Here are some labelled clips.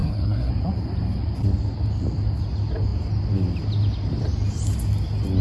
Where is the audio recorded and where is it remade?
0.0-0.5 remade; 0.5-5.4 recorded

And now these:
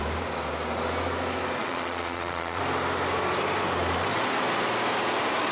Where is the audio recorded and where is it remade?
0.0-1.6 recorded; 1.6-2.6 remade; 2.6-5.5 recorded

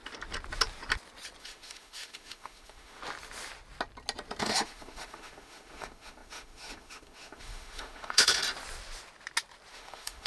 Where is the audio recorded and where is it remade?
0.0-1.4 recorded; 1.4-3.0 remade; 3.0-4.4 recorded; 4.4-8.4 remade; 8.4-9.7 recorded; 9.7-10.3 remade

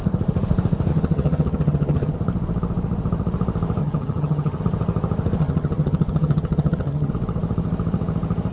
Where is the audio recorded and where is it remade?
0.0-0.9 recorded; 0.9-2.1 remade; 2.1-3.8 recorded; 3.8-4.6 remade; 4.6-5.4 recorded; 5.4-7.1 remade; 7.1-8.5 recorded